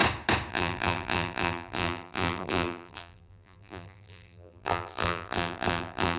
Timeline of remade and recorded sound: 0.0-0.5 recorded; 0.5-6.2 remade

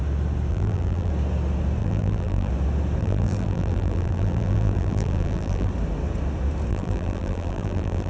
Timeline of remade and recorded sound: 0.0-0.5 recorded; 0.5-1.1 remade; 1.1-1.8 recorded; 1.8-2.5 remade; 2.5-3.0 recorded; 3.0-5.7 remade; 5.7-6.7 recorded; 6.7-8.1 remade

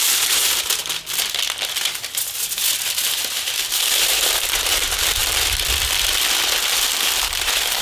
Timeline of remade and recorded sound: 0.0-0.8 remade; 0.8-3.2 recorded; 3.2-5.2 remade; 5.2-6.7 recorded; 6.7-7.8 remade

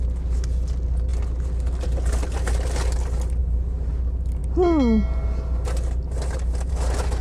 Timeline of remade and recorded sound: 0.0-7.2 recorded

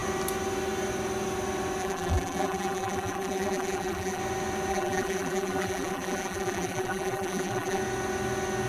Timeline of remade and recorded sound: 0.0-1.8 recorded; 1.8-4.2 remade; 4.2-4.7 recorded; 4.7-7.8 remade; 7.8-8.7 recorded